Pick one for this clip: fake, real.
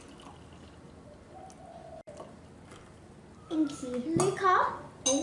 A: real